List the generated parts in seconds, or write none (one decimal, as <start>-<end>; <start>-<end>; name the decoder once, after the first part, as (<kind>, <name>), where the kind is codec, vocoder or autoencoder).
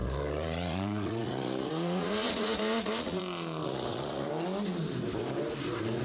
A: 0.0-3.2 (vocoder, Vocos); 3.6-4.3